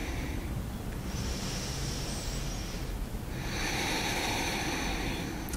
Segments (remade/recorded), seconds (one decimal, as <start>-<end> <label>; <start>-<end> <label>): 0.0-0.7 remade; 0.7-3.7 recorded; 3.7-4.6 remade; 4.6-5.6 recorded